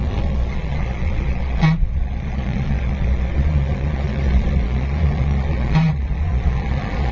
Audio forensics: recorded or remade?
remade